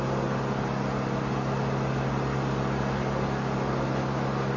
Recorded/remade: recorded